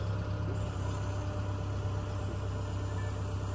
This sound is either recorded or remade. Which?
recorded